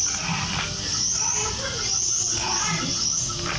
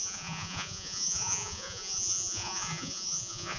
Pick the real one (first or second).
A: first